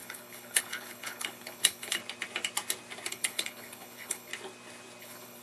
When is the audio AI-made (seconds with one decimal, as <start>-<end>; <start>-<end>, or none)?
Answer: 0.0-2.0; 3.1-4.3; 5.0-5.4